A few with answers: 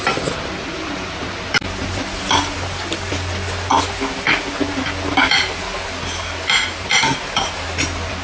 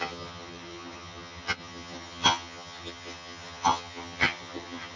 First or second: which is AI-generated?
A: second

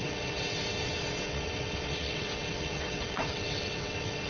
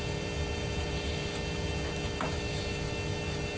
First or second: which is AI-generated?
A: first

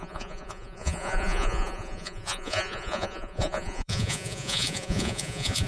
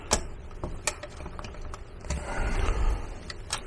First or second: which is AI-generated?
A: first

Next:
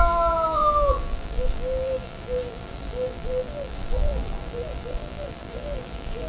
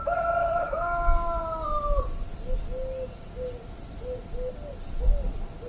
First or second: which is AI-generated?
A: first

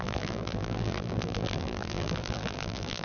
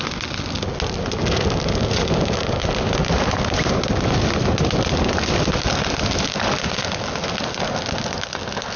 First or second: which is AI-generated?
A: first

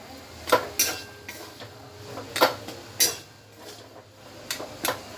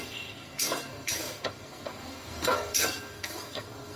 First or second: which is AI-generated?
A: second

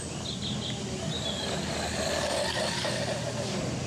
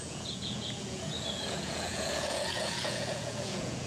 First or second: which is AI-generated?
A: second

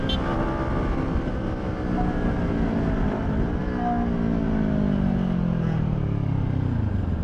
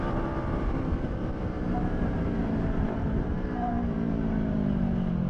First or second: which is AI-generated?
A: second